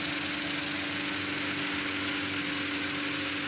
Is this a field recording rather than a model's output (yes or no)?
yes